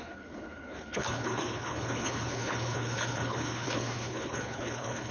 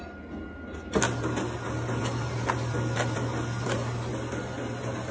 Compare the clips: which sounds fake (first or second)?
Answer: first